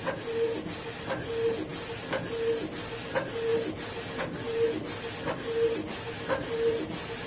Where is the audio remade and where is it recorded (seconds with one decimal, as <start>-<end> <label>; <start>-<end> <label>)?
0.0-7.3 recorded